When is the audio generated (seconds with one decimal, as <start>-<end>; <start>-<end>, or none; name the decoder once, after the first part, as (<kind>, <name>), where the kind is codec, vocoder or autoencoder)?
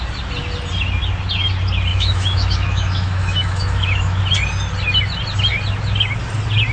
1.9-4.2 (autoencoder, DAC-VAE)